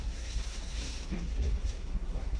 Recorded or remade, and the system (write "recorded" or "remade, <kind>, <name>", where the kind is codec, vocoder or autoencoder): remade, codec, SNAC